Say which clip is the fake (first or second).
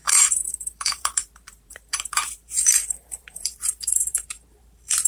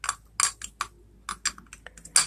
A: first